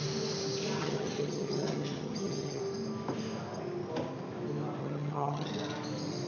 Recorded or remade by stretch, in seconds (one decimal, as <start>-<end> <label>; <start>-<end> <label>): 0.0-0.8 recorded; 0.8-2.6 remade; 2.6-4.8 recorded; 4.8-5.5 remade; 5.5-6.3 recorded

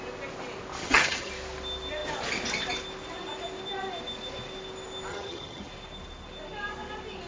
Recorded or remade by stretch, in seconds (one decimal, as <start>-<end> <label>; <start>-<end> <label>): 0.0-0.8 recorded; 0.8-1.3 remade; 1.3-5.1 recorded; 5.1-5.7 remade; 5.7-7.3 recorded

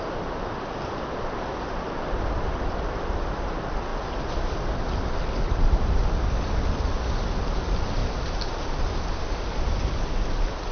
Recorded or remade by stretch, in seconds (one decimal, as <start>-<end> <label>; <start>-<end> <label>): 0.0-10.7 recorded

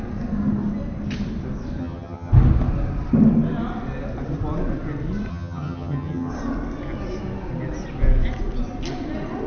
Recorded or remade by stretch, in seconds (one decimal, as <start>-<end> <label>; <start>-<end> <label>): 0.0-1.8 recorded; 1.8-2.3 remade; 2.3-5.3 recorded; 5.3-6.3 remade; 6.3-9.5 recorded

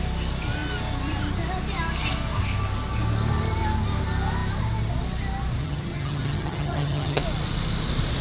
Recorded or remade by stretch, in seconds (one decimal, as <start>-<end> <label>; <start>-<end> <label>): 0.0-5.6 recorded; 5.6-7.2 remade; 7.2-8.2 recorded

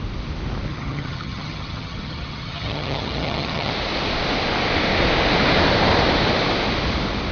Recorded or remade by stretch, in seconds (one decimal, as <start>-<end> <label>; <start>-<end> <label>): 0.0-0.7 recorded; 0.7-3.7 remade; 3.7-7.3 recorded